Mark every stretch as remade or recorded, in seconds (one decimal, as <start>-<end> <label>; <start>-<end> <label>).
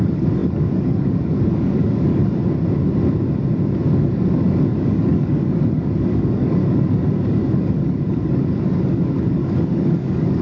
0.0-2.4 remade; 2.4-3.9 recorded; 3.9-10.4 remade